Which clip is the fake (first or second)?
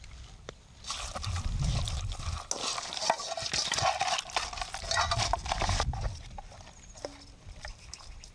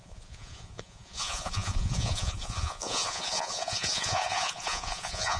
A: second